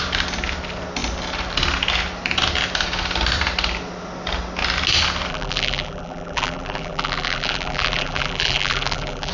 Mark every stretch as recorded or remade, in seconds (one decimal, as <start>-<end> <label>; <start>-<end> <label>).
0.0-5.3 recorded; 5.3-9.3 remade